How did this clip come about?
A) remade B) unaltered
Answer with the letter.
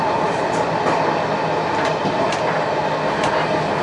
B